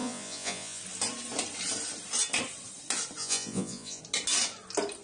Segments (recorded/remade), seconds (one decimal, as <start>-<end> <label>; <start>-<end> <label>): 0.0-0.8 remade; 0.8-3.2 recorded; 3.2-4.0 remade; 4.0-5.0 recorded